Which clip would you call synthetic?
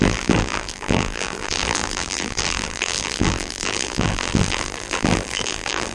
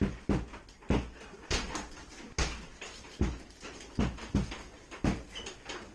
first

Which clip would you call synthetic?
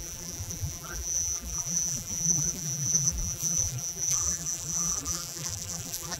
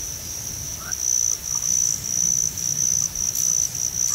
first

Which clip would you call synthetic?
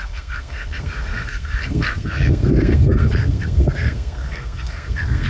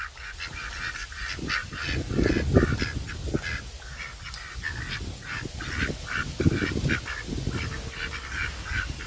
first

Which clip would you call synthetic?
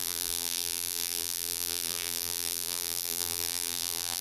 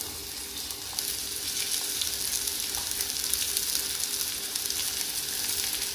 first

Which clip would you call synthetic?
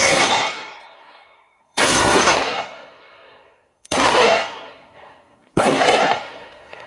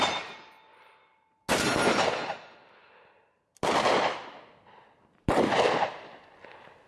first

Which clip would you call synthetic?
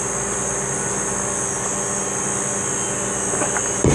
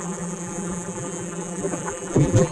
second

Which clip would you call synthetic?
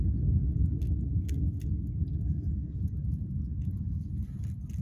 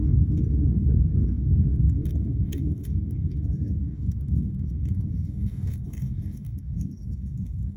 second